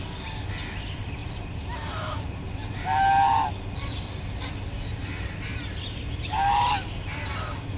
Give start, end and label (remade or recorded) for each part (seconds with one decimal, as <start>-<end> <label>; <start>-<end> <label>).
0.0-1.2 recorded; 1.2-2.8 remade; 2.8-7.8 recorded